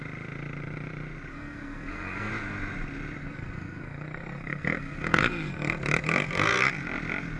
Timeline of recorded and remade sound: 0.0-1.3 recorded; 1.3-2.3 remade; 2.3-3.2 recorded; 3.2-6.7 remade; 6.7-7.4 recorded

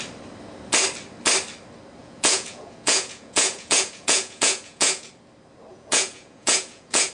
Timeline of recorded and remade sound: 0.0-2.0 recorded; 2.0-5.1 remade; 5.1-5.7 recorded; 5.7-7.1 remade

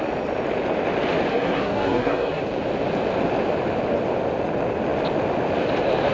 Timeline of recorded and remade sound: 0.0-1.3 recorded; 1.3-2.4 remade; 2.4-6.1 recorded